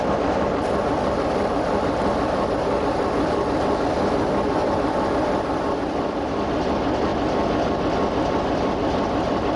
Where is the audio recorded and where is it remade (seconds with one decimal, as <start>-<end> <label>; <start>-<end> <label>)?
0.0-9.6 recorded